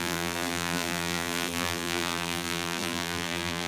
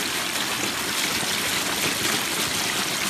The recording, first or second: second